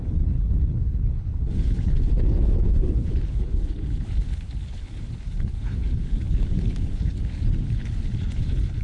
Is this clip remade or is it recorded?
remade